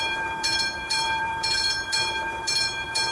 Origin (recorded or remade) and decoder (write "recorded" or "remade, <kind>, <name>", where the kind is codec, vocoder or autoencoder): remade, vocoder, BigVGAN v2